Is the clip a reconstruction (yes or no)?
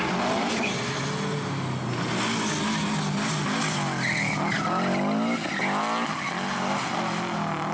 no